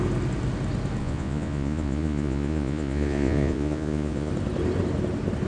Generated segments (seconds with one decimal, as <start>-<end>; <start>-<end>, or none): 1.0-4.3